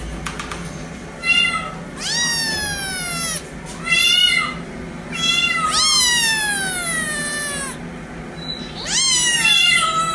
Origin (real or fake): real